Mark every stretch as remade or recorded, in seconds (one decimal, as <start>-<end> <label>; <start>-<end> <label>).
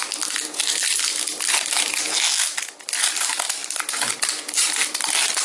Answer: 0.0-5.4 recorded